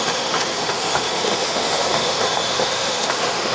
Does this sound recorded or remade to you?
remade